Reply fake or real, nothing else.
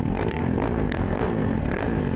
fake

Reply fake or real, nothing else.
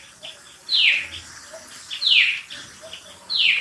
real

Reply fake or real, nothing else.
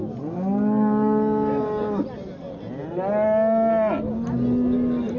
real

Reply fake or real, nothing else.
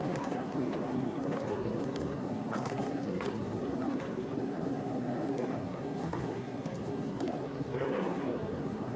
fake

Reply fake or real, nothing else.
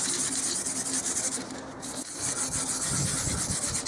real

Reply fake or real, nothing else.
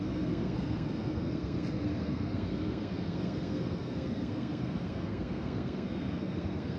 fake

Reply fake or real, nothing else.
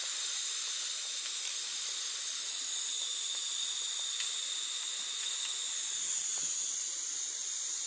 real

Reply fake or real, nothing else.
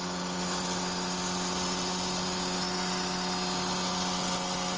real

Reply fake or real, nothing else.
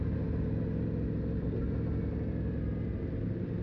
real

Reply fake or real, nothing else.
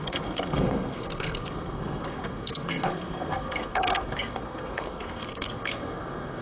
fake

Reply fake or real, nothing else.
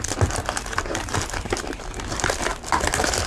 real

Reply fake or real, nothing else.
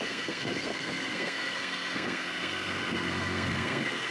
fake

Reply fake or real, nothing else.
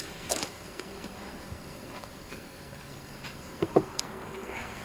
fake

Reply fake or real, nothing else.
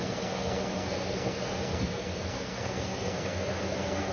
fake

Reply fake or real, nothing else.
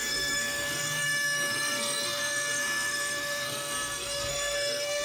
fake